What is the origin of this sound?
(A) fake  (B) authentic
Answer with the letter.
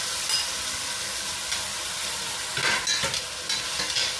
B